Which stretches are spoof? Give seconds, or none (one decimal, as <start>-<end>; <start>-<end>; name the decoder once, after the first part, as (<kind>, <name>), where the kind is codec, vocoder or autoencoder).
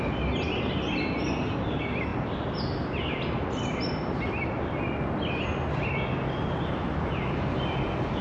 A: none